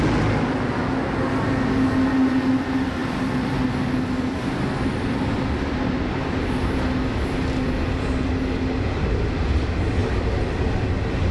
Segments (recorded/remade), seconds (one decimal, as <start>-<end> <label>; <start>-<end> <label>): 0.0-3.0 recorded; 3.0-3.5 remade; 3.5-11.3 recorded